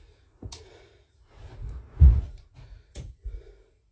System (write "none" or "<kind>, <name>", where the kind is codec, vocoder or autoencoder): vocoder, Vocos